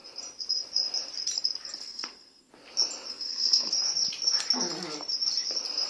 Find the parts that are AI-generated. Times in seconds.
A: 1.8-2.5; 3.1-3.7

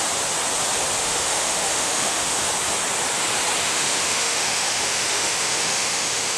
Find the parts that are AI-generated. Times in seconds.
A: 1.0-2.5; 3.6-6.4

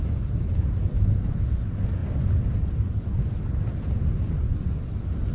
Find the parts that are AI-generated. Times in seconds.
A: none

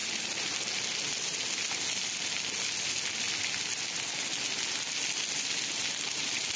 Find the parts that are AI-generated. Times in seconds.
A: none

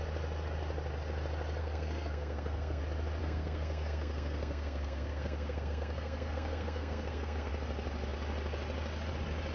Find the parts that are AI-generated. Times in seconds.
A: 1.6-2.8; 3.2-7.5

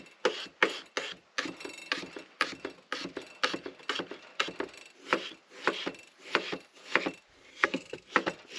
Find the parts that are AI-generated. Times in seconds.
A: 7.5-8.1

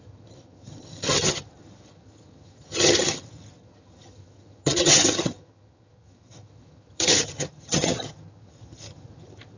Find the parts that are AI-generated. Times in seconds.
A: 0.0-9.6